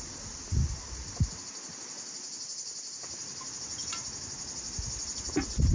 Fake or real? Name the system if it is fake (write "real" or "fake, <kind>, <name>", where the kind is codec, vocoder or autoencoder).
real